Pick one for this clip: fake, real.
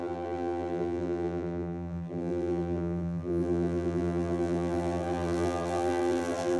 fake